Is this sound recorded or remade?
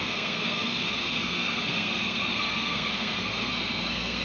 remade